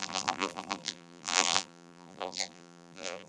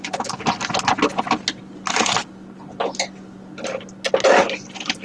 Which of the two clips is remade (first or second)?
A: first